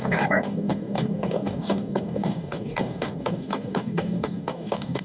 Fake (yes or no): yes